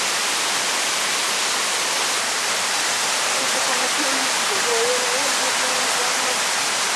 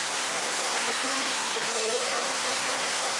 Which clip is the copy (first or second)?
second